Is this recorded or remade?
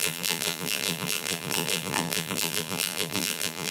remade